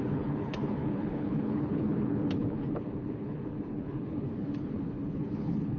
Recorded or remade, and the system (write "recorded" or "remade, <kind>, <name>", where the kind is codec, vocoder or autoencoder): remade, codec, HILCodec